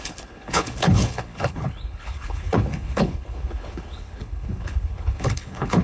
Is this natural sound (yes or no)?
no